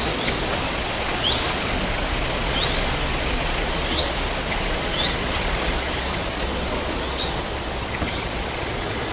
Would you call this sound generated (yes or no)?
yes